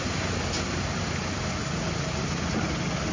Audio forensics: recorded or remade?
recorded